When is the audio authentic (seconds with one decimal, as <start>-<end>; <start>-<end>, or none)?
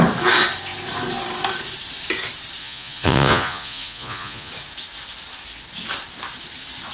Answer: 0.0-2.6; 4.5-6.9